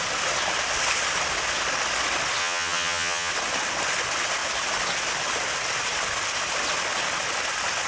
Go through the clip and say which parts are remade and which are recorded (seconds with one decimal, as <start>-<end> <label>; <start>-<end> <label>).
0.0-2.4 recorded; 2.4-3.3 remade; 3.3-7.9 recorded